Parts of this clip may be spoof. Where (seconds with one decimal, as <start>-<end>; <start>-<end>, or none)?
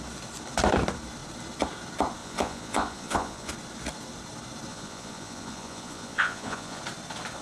2.2-3.5; 4.7-6.8